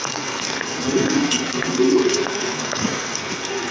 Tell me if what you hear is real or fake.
fake